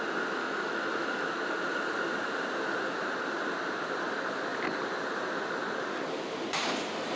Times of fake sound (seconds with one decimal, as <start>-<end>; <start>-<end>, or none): 0.4-1.3